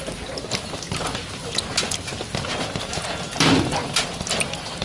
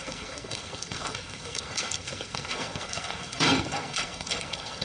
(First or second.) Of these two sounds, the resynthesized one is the second